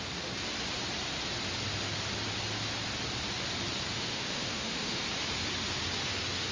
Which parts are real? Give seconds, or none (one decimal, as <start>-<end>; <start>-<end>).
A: 0.0-3.9; 5.0-6.5